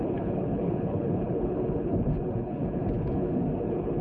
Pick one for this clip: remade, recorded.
remade